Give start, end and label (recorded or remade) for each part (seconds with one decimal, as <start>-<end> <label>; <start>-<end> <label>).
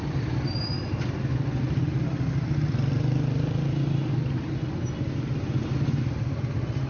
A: 0.0-6.9 recorded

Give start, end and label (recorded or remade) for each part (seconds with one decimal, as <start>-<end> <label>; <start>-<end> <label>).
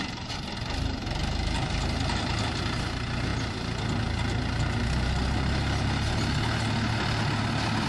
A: 0.0-7.9 recorded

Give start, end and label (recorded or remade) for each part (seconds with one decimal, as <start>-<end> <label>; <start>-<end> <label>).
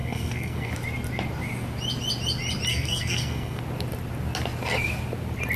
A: 0.0-0.7 remade; 0.7-2.7 recorded; 2.7-3.6 remade; 3.6-5.6 recorded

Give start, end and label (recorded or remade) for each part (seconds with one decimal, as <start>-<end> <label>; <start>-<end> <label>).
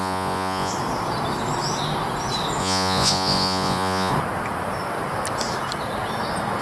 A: 0.0-0.7 remade; 0.7-2.6 recorded; 2.6-4.1 remade; 4.1-6.6 recorded